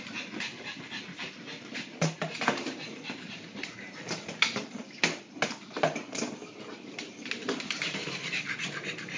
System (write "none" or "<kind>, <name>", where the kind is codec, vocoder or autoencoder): vocoder, BigVGAN v2